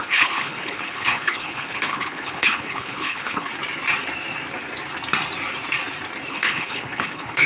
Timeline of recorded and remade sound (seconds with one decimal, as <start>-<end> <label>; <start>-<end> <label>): 0.0-3.5 remade; 3.5-6.3 recorded; 6.3-7.5 remade